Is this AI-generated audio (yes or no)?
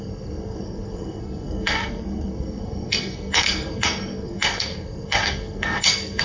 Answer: yes